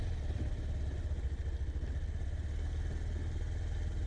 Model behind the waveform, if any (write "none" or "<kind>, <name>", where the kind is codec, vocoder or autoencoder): none